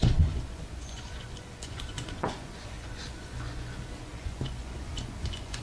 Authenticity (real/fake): fake